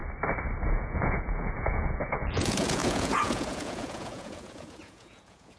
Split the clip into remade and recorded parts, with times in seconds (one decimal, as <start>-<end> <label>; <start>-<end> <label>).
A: 0.0-0.7 recorded; 0.7-5.6 remade